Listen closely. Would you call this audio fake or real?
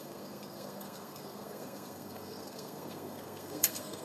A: fake